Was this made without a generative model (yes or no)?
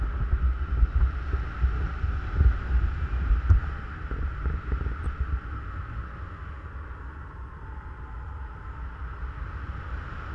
yes